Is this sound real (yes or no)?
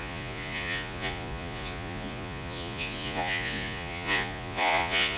no